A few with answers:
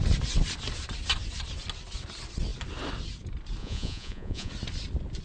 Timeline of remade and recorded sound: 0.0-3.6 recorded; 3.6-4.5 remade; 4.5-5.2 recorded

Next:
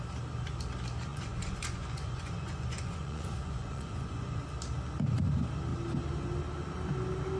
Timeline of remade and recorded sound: 0.0-1.1 recorded; 1.1-4.4 remade; 4.4-7.4 recorded

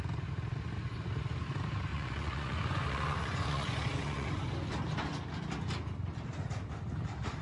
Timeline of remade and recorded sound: 0.0-1.9 recorded; 1.9-4.4 remade; 4.4-7.4 recorded

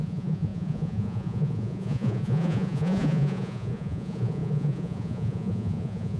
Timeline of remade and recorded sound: 0.0-6.2 remade

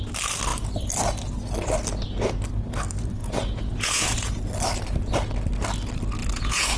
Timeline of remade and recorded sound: 0.0-3.2 recorded; 3.2-4.3 remade; 4.3-6.2 recorded; 6.2-6.8 remade

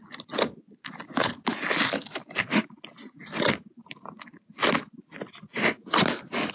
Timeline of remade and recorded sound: 0.0-6.5 recorded

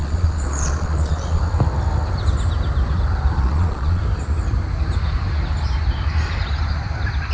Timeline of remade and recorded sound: 0.0-1.4 remade; 1.4-3.4 recorded; 3.4-4.0 remade; 4.0-7.3 recorded